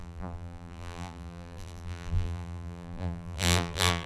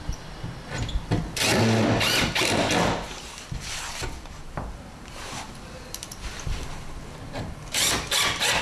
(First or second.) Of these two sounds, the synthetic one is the first